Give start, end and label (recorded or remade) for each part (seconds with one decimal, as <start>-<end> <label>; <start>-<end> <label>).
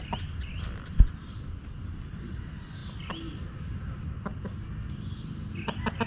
0.0-6.1 recorded